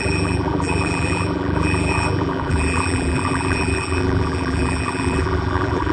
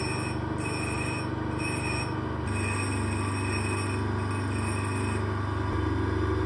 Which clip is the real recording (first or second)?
second